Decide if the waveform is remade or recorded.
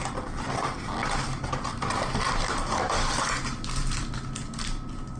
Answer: recorded